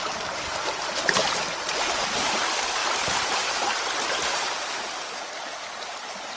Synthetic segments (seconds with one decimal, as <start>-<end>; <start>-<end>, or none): 2.8-4.0